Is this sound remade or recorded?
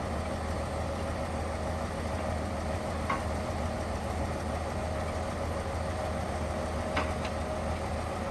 recorded